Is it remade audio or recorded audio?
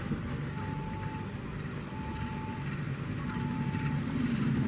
recorded